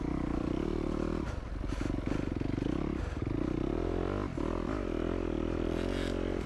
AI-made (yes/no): no